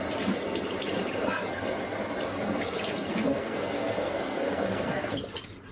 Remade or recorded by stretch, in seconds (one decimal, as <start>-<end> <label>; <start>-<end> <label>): 0.0-3.1 recorded; 3.1-5.2 remade; 5.2-5.7 recorded